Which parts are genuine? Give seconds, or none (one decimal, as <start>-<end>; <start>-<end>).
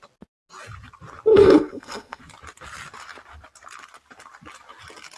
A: 0.0-1.3; 2.2-5.2